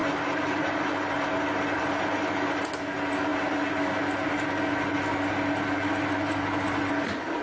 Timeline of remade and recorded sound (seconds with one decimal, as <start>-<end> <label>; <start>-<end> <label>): 0.0-0.9 remade; 0.9-7.4 recorded